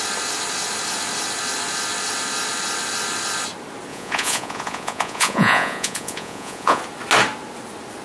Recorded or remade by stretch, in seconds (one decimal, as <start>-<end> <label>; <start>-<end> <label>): 0.0-3.9 recorded; 3.9-6.8 remade; 6.8-8.0 recorded